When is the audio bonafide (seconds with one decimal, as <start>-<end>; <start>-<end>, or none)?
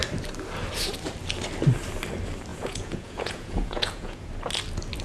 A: 0.0-2.5; 4.3-5.0